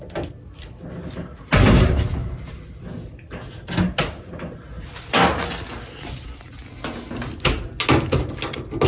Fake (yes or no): no